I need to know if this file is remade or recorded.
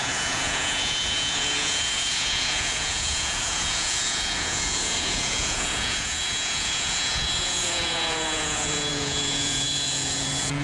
remade